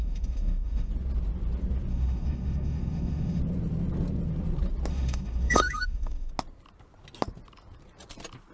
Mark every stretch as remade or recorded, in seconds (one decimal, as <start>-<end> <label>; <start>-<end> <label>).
0.0-0.9 remade; 0.9-1.9 recorded; 1.9-3.4 remade; 3.4-4.9 recorded; 4.9-6.3 remade; 6.3-8.5 recorded